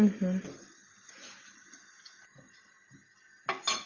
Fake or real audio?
real